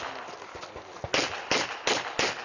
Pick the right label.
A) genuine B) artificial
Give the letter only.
A